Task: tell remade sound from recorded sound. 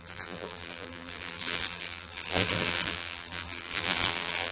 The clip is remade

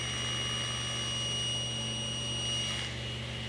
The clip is recorded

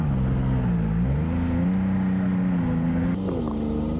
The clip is recorded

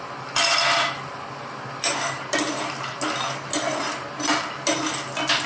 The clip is recorded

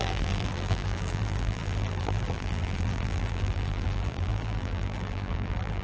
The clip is remade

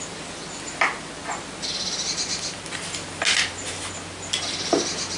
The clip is recorded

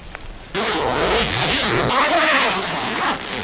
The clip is recorded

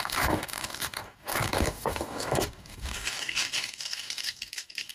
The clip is remade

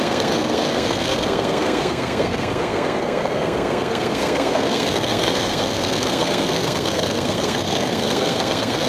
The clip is remade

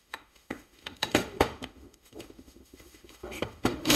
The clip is remade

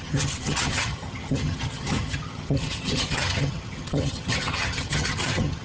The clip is remade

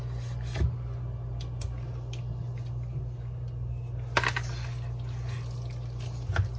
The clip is recorded